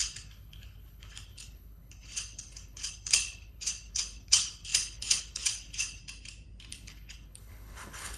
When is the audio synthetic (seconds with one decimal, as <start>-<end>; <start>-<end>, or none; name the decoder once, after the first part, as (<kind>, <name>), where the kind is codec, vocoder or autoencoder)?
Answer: 0.0-6.0 (codec, HILCodec); 6.7-8.2